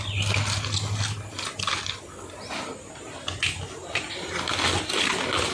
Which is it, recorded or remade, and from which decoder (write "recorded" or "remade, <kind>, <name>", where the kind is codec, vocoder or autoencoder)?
recorded